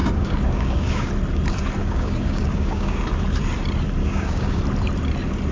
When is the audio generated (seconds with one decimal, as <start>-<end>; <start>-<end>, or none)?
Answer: 0.0-1.1; 1.8-3.0; 4.0-4.6